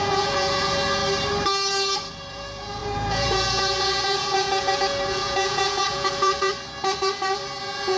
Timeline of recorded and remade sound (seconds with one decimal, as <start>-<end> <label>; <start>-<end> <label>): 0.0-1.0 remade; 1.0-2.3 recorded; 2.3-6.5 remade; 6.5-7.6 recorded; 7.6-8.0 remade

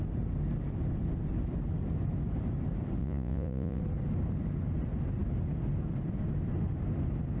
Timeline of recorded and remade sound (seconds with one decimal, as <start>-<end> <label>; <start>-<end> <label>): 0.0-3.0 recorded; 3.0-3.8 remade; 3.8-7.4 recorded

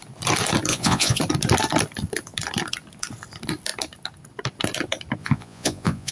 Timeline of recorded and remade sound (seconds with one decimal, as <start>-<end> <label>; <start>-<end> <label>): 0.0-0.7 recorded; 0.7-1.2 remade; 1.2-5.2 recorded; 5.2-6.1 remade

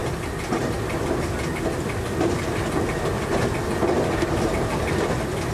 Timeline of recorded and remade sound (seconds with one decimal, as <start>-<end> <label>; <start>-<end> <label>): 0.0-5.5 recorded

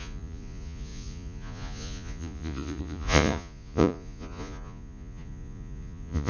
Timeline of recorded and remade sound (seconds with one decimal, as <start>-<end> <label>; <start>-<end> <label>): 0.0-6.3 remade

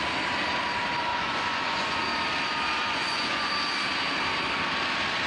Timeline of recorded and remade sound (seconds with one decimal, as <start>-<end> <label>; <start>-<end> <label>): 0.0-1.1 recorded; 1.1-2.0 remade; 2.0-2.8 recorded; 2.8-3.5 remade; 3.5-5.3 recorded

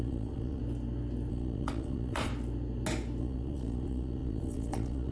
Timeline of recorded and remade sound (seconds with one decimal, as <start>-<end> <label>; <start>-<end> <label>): 0.0-0.6 remade; 0.6-1.3 recorded; 1.3-2.3 remade; 2.3-3.2 recorded; 3.2-5.1 remade

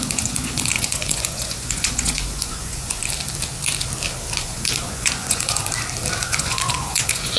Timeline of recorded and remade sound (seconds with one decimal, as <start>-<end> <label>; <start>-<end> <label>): 0.0-3.0 remade; 3.0-4.4 recorded; 4.4-5.6 remade; 5.6-6.2 recorded; 6.2-7.4 remade